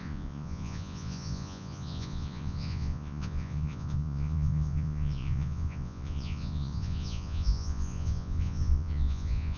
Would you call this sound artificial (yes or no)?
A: yes